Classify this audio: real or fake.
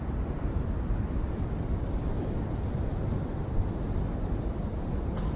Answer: real